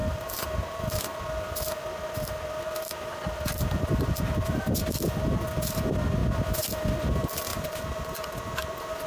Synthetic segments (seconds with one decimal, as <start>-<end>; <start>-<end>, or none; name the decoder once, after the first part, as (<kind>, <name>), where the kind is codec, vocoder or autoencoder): 0.0-0.7 (vocoder, BigVGAN v2); 3.9-4.6; 7.5-8.4